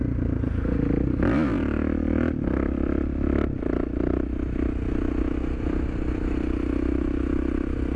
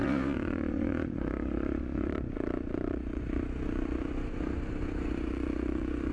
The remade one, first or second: second